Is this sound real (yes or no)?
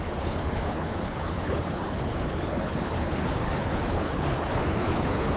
no